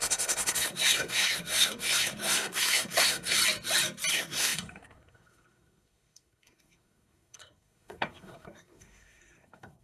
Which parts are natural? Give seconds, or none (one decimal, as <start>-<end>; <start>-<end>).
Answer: 3.4-4.1